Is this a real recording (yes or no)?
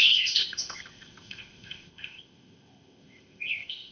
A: no